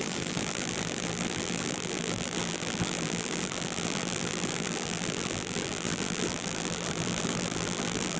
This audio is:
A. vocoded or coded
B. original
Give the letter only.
A